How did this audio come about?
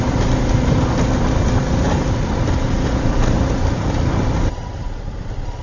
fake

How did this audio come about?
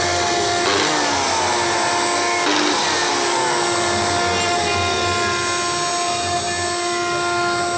real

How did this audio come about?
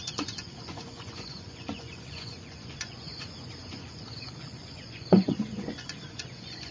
fake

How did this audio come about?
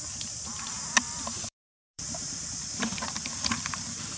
fake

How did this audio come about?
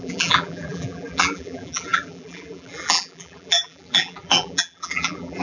fake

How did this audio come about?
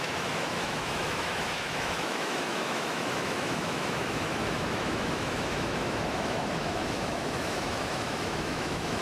fake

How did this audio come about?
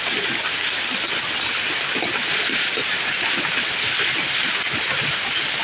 real